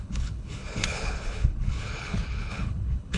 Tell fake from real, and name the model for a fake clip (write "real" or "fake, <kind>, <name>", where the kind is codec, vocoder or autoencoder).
fake, codec, HILCodec